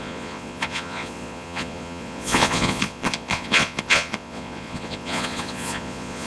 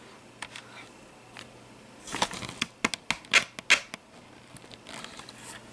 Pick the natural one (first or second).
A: second